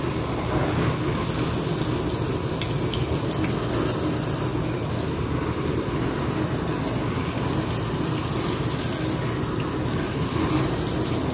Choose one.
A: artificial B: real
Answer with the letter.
B